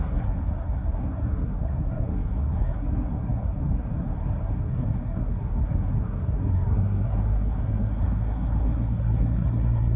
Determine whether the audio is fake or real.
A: fake